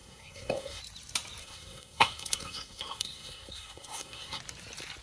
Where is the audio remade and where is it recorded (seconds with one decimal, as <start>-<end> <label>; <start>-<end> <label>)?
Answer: 0.0-0.8 remade; 0.8-1.4 recorded; 1.4-4.4 remade; 4.4-5.0 recorded